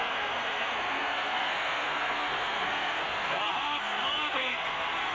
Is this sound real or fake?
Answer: fake